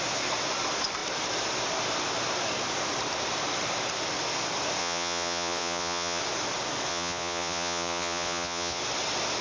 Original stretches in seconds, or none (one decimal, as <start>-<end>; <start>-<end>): 0.0-4.8; 6.2-6.9; 8.8-9.4